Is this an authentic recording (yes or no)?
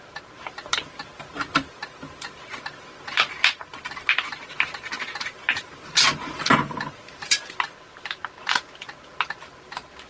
yes